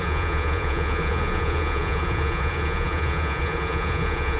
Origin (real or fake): fake